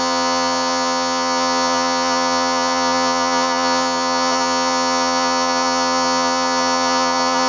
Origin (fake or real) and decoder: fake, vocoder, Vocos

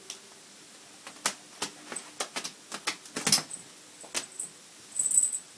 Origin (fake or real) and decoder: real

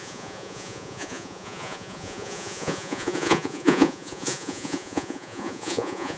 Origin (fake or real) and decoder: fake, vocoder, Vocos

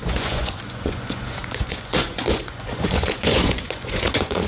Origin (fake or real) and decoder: fake, vocoder, Vocos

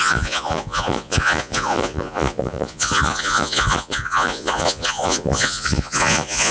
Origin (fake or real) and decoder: fake, vocoder, Vocos